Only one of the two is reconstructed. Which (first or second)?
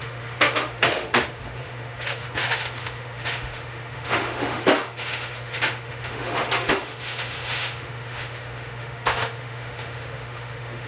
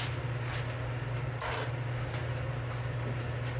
first